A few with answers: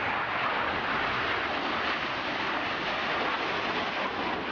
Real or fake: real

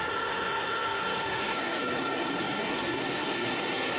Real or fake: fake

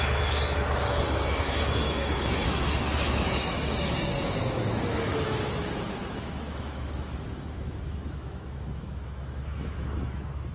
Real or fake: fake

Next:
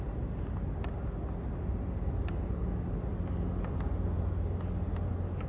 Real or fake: real